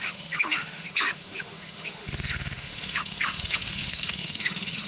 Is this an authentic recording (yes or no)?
no